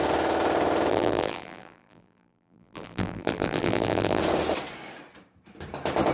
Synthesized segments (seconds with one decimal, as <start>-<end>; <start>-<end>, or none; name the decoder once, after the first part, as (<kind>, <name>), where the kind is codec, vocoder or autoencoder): 0.9-4.2 (vocoder, BigVGAN v2)